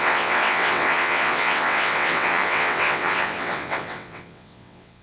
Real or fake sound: fake